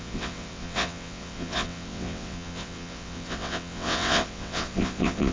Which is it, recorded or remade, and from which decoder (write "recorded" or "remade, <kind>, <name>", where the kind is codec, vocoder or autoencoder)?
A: remade, vocoder, WaveNeXt